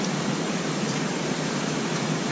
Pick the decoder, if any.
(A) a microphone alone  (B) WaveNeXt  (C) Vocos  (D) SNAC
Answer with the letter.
C